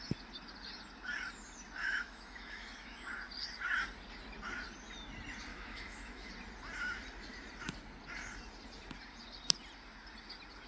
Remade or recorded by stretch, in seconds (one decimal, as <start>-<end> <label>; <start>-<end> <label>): 0.0-1.8 recorded; 1.8-3.1 remade; 3.1-5.5 recorded; 5.5-6.3 remade; 6.3-10.7 recorded